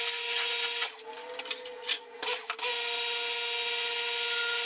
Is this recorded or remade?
recorded